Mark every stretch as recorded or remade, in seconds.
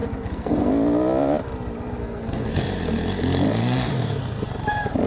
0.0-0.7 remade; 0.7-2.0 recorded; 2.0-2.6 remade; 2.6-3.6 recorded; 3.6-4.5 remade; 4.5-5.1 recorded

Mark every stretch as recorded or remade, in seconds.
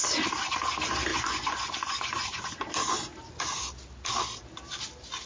0.0-1.1 recorded; 1.1-2.4 remade; 2.4-5.3 recorded